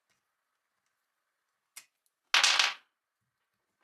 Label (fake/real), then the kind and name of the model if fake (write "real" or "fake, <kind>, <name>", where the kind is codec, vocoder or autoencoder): real